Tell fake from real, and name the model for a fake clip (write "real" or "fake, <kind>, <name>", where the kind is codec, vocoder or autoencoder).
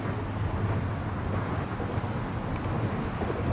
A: real